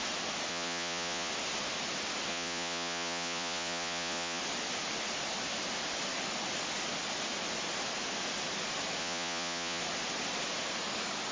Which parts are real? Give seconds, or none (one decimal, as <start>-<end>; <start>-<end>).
0.0-0.5; 1.3-2.3; 4.4-9.0; 9.8-11.3